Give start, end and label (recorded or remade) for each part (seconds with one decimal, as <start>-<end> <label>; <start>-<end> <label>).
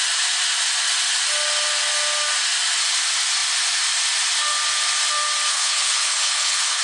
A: 0.0-5.5 recorded; 5.5-6.8 remade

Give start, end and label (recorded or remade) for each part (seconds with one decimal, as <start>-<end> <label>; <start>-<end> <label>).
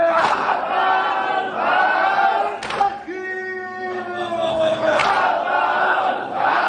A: 0.0-0.5 remade; 0.5-4.5 recorded; 4.5-5.0 remade; 5.0-5.8 recorded; 5.8-6.7 remade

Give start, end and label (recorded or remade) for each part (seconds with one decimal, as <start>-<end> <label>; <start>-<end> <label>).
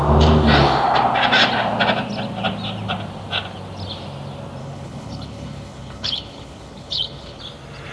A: 0.0-4.6 recorded; 4.6-7.4 remade; 7.4-7.9 recorded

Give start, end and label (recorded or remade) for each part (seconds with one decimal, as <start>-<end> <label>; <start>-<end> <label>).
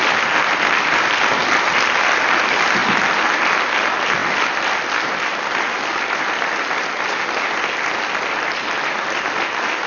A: 0.0-9.9 recorded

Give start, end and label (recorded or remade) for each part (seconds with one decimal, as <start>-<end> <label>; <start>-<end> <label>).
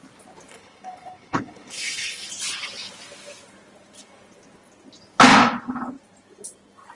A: 0.0-0.5 recorded; 0.5-2.3 remade; 2.3-7.0 recorded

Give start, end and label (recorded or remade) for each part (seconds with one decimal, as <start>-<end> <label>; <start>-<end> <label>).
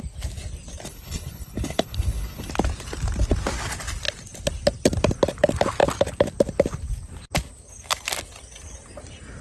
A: 0.0-0.9 recorded; 0.9-2.5 remade; 2.5-9.4 recorded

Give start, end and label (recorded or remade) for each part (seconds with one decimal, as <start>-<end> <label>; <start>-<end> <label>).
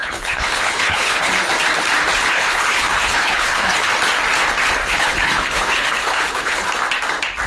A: 0.0-1.3 remade; 1.3-2.3 recorded; 2.3-3.9 remade; 3.9-4.8 recorded; 4.8-6.7 remade; 6.7-7.5 recorded